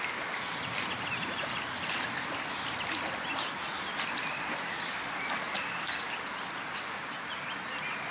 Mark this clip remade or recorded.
recorded